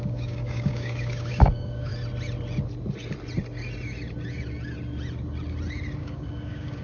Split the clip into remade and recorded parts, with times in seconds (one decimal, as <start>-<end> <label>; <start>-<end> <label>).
0.0-1.9 remade; 1.9-6.0 recorded; 6.0-6.8 remade